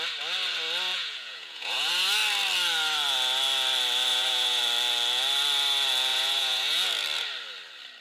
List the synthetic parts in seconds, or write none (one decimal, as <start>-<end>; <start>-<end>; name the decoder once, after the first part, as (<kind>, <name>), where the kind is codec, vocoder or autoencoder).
0.9-1.9 (vocoder, Vocos); 4.1-4.6; 6.1-6.9